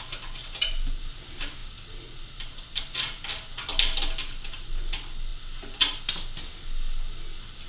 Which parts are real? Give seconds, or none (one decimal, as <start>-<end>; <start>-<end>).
0.0-7.7